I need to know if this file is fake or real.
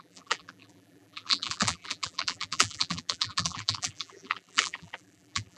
fake